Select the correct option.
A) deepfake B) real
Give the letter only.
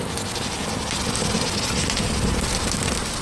B